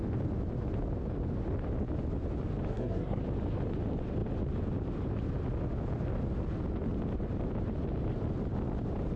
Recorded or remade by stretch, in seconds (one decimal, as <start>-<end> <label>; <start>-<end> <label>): 0.0-2.7 recorded; 2.7-3.2 remade; 3.2-9.2 recorded